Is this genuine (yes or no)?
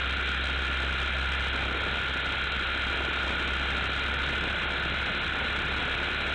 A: yes